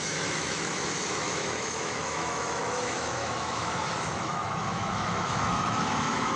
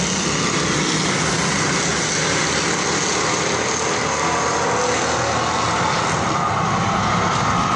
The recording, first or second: second